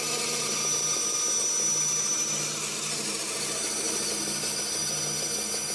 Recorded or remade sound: recorded